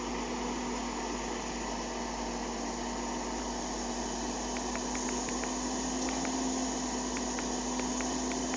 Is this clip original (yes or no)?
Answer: yes